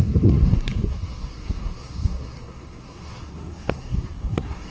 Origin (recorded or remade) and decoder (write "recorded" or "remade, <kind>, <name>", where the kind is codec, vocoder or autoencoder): remade, codec, SNAC